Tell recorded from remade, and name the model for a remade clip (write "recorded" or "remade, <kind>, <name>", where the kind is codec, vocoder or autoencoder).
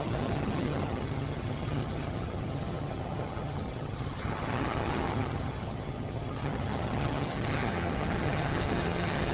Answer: remade, vocoder, HiFi-GAN